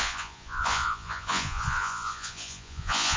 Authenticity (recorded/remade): remade